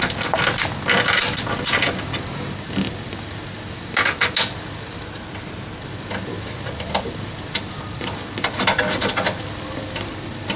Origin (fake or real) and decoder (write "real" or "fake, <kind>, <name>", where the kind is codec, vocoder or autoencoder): real